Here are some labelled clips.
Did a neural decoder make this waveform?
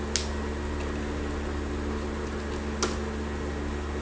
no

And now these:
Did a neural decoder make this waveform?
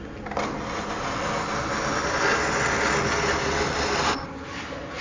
no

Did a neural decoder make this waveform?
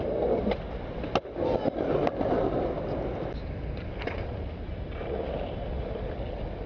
no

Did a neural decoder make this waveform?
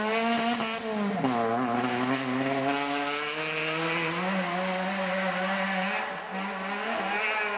no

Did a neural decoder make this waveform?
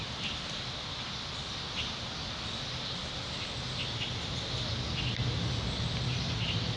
no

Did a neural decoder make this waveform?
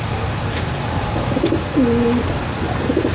no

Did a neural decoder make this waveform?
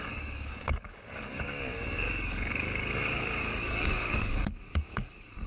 yes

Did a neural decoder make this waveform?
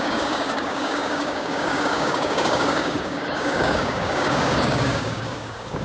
yes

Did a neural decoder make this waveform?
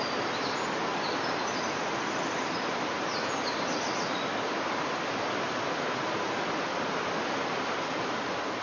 no